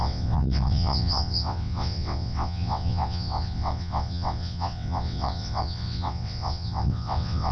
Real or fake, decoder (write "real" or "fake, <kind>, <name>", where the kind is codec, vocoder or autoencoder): fake, vocoder, WaveNeXt